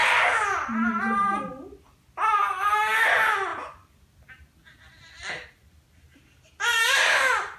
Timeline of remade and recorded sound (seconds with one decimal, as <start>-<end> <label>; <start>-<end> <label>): 0.0-7.6 recorded